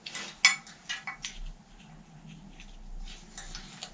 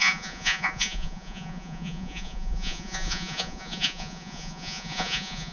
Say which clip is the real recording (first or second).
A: first